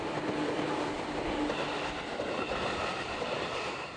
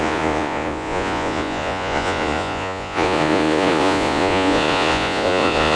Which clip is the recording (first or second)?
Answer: first